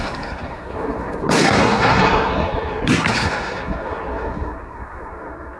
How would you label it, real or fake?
fake